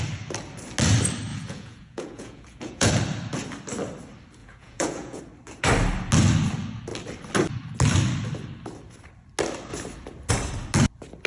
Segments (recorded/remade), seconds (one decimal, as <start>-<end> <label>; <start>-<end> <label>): 0.0-1.3 recorded; 1.3-2.9 remade; 2.9-4.4 recorded; 4.4-5.2 remade; 5.2-11.3 recorded